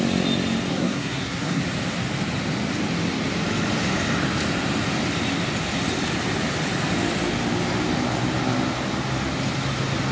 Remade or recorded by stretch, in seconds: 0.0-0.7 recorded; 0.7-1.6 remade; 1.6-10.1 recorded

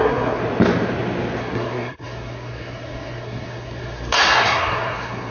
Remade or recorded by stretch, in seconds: 0.0-0.4 remade; 0.4-1.4 recorded; 1.4-5.3 remade

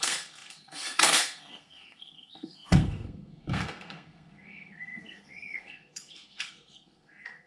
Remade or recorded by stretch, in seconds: 0.0-7.5 remade